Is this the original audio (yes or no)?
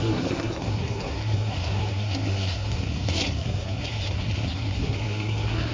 no